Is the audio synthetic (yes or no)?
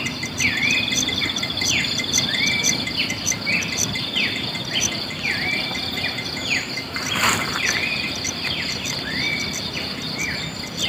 yes